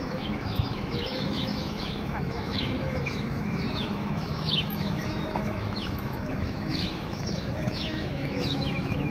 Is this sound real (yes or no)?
no